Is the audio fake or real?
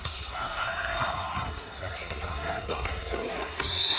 fake